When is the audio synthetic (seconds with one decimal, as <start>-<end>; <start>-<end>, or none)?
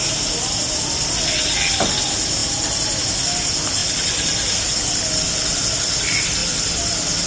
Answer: 3.8-5.6; 6.4-7.3